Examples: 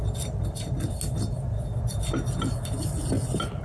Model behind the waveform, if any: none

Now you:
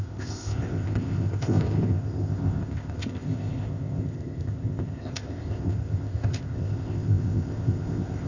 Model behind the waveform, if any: codec, ZipCodec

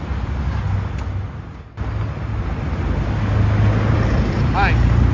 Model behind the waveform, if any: none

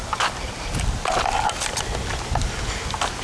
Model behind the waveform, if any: none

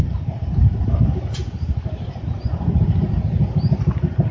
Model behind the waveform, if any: none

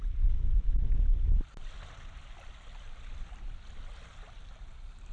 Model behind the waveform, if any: none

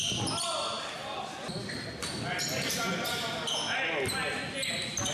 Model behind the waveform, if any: none